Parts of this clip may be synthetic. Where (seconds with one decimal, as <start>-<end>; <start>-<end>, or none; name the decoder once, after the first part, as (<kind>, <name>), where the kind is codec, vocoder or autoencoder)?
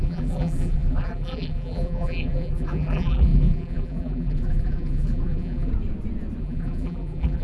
0.0-5.7 (vocoder, BigVGAN v2); 6.4-7.4